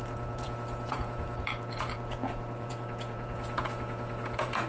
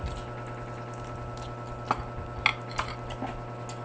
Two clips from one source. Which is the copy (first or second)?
first